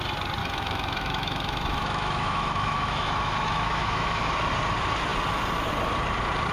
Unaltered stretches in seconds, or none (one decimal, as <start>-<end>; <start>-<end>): 0.0-0.4; 4.3-6.5